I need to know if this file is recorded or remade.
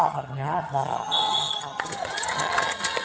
remade